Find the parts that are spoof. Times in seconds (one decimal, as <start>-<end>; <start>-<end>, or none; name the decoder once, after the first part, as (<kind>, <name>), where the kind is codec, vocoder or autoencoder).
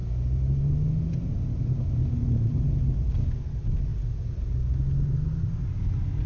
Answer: none